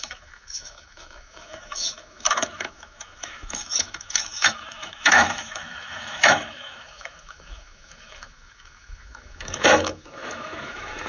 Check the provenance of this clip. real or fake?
fake